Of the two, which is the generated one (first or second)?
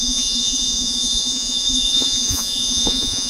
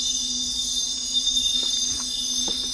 first